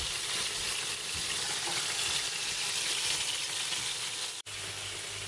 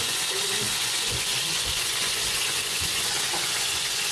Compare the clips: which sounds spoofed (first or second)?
second